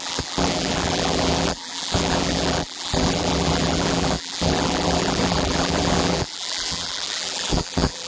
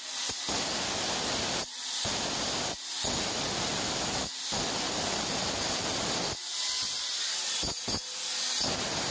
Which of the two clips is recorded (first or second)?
second